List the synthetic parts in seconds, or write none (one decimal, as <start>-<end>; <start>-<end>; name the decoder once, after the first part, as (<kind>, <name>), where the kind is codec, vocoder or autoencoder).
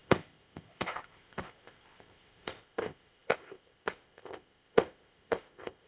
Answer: 0.0-5.9 (codec, ZipCodec)